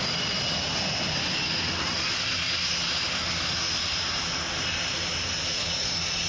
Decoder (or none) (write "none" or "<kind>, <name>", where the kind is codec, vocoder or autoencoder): none